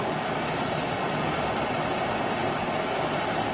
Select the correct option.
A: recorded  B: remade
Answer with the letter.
A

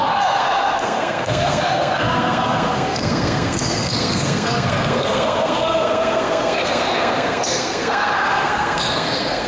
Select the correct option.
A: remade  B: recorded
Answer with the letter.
A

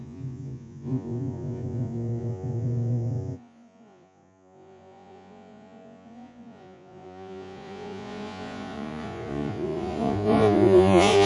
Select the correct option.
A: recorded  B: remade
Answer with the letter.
B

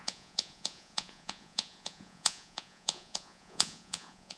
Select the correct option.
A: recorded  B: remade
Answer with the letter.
B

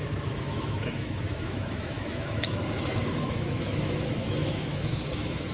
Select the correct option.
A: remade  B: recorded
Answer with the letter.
A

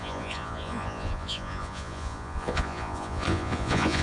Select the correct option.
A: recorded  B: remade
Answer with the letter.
B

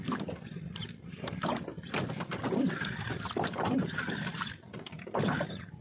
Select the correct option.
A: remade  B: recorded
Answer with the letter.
B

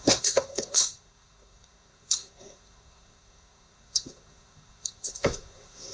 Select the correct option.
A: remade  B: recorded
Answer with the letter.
A